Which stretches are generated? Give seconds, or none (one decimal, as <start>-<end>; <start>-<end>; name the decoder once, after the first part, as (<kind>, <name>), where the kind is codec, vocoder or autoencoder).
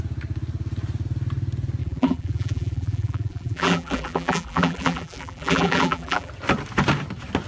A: 1.8-6.3 (vocoder, BigVGAN v2)